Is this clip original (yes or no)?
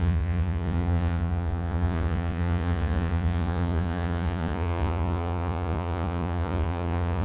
no